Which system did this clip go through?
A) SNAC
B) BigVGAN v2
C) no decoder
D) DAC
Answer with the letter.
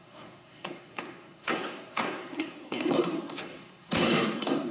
A